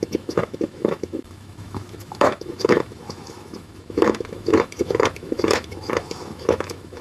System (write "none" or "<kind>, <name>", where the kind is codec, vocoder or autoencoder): autoencoder, DAC-VAE